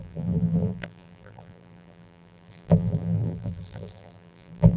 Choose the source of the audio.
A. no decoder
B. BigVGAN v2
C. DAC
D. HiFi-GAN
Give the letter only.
B